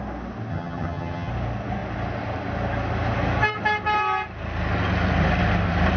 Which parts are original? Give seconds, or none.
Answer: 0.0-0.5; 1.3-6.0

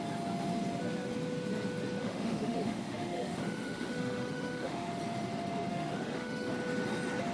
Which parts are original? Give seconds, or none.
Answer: 0.0-2.0; 4.9-5.7; 6.5-7.3